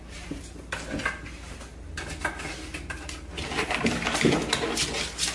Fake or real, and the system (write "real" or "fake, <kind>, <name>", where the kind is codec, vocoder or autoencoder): real